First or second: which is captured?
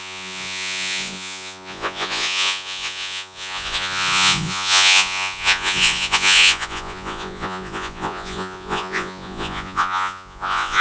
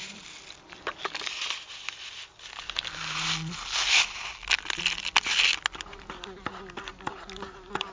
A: second